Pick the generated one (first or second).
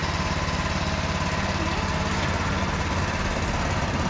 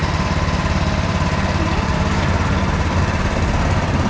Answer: second